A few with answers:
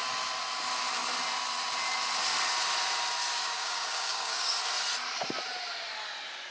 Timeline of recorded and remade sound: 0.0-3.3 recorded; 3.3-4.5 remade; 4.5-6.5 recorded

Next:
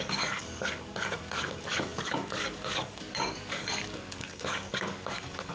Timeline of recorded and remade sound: 0.0-5.5 remade

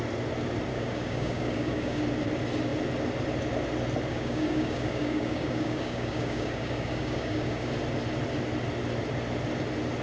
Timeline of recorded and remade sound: 0.0-0.7 recorded; 0.7-2.0 remade; 2.0-4.1 recorded; 4.1-7.7 remade; 7.7-10.0 recorded

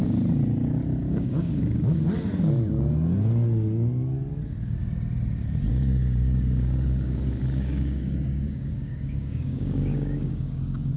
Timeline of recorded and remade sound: 0.0-1.0 recorded; 1.0-2.0 remade; 2.0-5.7 recorded; 5.7-11.0 remade

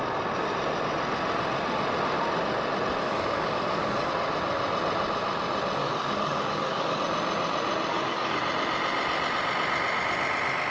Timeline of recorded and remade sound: 0.0-3.0 recorded; 3.0-4.1 remade; 4.1-5.8 recorded; 5.8-7.0 remade; 7.0-7.9 recorded; 7.9-8.4 remade; 8.4-10.7 recorded

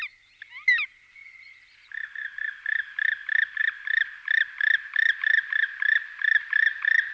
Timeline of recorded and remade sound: 0.0-7.1 recorded